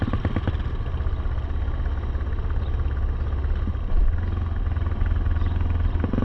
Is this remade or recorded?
recorded